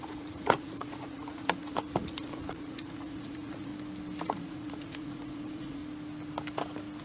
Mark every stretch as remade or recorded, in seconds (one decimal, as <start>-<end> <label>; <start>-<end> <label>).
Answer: 0.0-3.7 remade; 3.7-4.2 recorded; 4.2-5.8 remade; 5.8-7.0 recorded

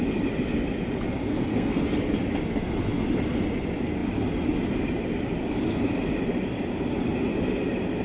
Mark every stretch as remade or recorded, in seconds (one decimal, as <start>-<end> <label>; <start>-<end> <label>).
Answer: 0.0-1.3 recorded; 1.3-1.8 remade; 1.8-8.0 recorded

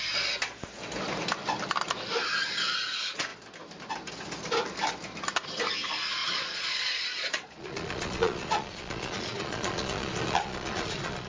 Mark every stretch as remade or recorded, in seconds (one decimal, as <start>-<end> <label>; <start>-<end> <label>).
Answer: 0.0-6.2 recorded; 6.2-11.3 remade

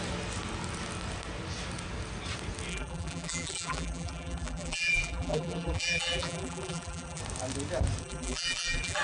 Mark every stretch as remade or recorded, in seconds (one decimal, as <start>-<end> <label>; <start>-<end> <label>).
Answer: 0.0-2.7 recorded; 2.7-7.2 remade; 7.2-8.0 recorded; 8.0-9.0 remade

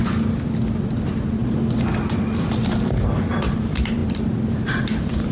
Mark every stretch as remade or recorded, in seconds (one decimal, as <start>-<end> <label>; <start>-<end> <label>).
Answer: 0.0-0.9 recorded; 0.9-1.4 remade; 1.4-2.9 recorded; 2.9-5.3 remade

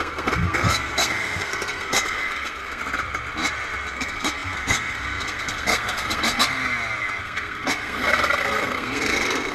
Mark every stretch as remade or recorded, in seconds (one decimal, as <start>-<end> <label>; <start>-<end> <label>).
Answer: 0.0-2.8 remade; 2.8-3.9 recorded; 3.9-6.6 remade; 6.6-7.2 recorded; 7.2-9.5 remade

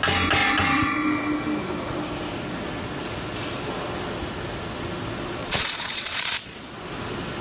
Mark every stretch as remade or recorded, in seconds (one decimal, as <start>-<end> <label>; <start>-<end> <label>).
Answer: 0.0-5.4 recorded; 5.4-6.7 remade; 6.7-7.4 recorded

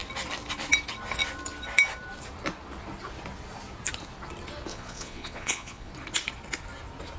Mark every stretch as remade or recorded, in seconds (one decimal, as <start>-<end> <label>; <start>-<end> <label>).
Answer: 0.0-4.7 recorded; 4.7-5.9 remade; 5.9-7.2 recorded